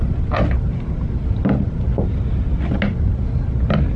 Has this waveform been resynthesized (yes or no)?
no